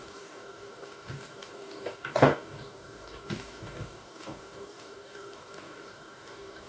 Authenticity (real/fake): fake